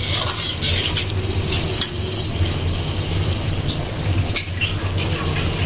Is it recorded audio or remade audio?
recorded